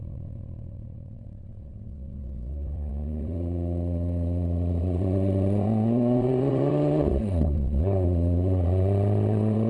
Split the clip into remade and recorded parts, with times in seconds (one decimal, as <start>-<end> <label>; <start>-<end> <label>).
0.0-9.7 remade